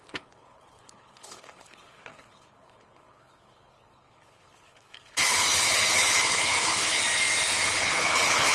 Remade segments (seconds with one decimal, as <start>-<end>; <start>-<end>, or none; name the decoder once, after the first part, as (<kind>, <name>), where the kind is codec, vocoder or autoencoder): 0.0-7.0 (codec, HILCodec); 7.7-8.5